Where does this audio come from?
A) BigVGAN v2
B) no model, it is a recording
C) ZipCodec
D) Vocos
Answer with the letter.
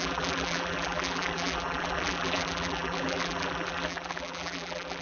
A